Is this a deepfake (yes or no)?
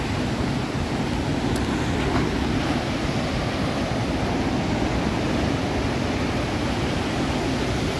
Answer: no